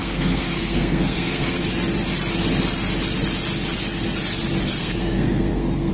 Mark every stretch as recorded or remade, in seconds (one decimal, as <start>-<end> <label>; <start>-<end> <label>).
0.0-1.6 remade; 1.6-4.8 recorded; 4.8-5.9 remade